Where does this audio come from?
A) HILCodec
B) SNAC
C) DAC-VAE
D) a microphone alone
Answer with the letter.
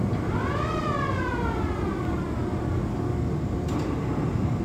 D